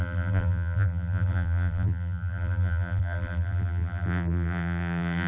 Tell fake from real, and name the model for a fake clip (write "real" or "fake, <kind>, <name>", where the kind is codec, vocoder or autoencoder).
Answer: fake, vocoder, BigVGAN v2